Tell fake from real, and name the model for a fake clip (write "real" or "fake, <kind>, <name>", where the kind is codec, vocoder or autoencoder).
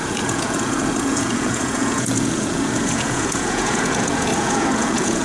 fake, vocoder, Vocos